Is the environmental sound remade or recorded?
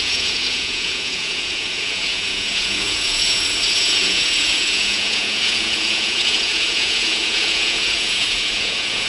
remade